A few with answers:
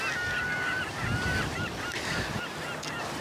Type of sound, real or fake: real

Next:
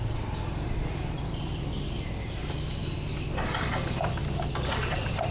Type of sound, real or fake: real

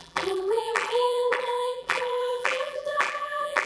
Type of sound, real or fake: fake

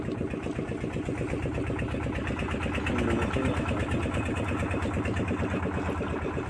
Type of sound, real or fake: real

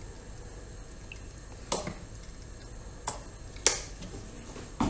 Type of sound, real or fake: real